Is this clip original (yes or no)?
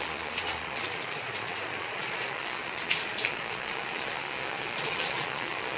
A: no